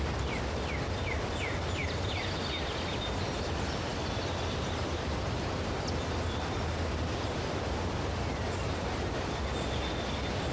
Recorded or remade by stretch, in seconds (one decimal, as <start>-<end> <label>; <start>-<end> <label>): 0.0-3.9 recorded; 3.9-8.8 remade; 8.8-10.5 recorded